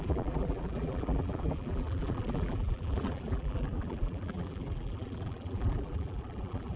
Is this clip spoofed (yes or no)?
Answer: yes